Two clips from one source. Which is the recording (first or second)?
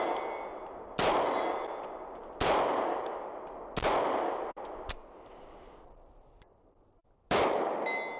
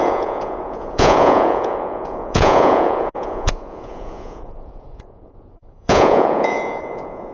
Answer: first